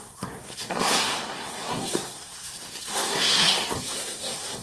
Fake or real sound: fake